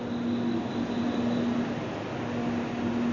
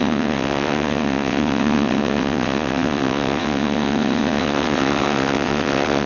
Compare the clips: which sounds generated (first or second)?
second